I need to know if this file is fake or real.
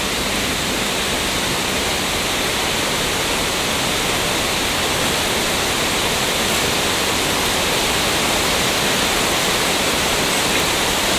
real